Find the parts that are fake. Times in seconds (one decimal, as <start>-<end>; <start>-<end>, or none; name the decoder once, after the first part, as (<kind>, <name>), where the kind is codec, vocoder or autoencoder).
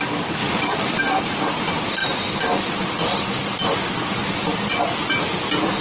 0.4-1.0 (vocoder, BigVGAN v2)